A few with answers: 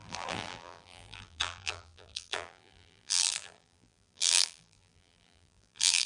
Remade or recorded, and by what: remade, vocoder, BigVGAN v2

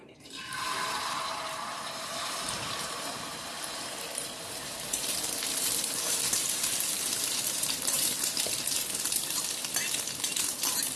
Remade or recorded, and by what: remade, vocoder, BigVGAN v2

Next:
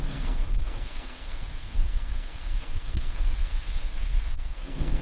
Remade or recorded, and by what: remade, codec, SNAC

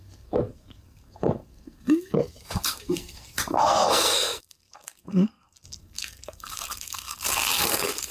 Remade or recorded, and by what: remade, codec, SNAC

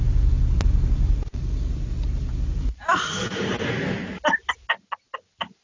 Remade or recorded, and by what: recorded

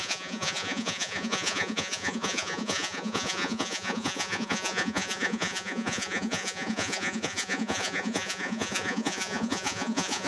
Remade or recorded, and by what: remade, vocoder, Vocos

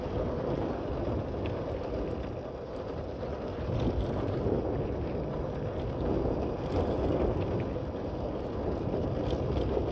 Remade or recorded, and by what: recorded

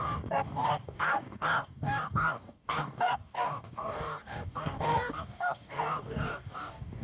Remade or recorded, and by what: remade, codec, DAC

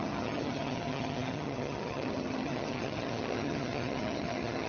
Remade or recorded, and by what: remade, vocoder, HiFi-GAN